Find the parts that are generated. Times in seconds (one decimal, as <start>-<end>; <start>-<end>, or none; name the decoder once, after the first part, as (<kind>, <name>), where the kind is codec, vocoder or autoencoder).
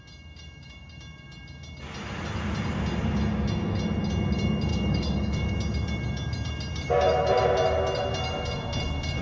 4.7-5.5 (codec, DAC)